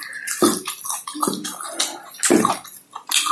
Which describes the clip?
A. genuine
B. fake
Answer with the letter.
A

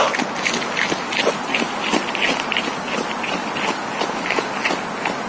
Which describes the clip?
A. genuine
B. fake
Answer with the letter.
A